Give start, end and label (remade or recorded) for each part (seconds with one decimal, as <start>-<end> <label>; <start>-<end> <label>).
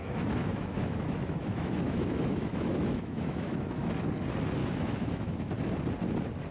0.0-3.9 remade; 3.9-4.6 recorded; 4.6-5.5 remade; 5.5-6.5 recorded